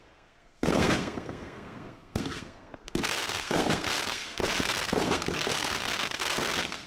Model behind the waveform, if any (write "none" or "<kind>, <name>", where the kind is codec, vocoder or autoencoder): codec, SNAC